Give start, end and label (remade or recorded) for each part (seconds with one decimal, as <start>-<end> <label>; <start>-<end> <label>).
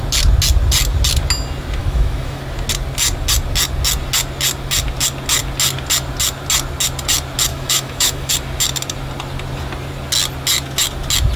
0.0-1.8 recorded; 1.8-2.4 remade; 2.4-7.5 recorded; 7.5-8.3 remade; 8.3-11.4 recorded